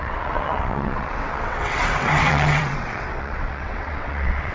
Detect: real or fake fake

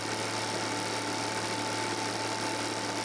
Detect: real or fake real